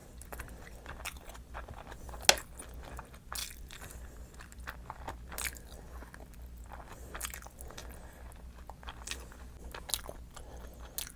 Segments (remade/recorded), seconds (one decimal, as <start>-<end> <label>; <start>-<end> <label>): 0.0-1.8 remade; 1.8-3.4 recorded; 3.4-4.5 remade; 4.5-11.2 recorded

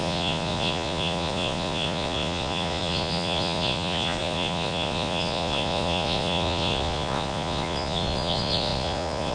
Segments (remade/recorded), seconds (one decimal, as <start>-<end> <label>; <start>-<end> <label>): 0.0-9.3 remade

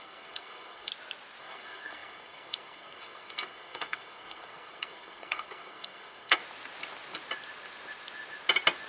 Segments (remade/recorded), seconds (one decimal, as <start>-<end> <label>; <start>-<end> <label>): 0.0-0.9 remade; 0.9-1.4 recorded; 1.4-6.4 remade; 6.4-8.9 recorded